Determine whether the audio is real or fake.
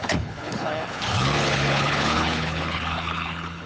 fake